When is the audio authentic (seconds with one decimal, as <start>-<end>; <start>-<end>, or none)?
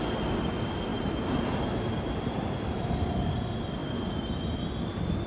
0.0-0.9; 3.2-3.8; 4.3-5.3